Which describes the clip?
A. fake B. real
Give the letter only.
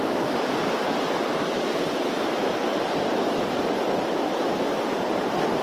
B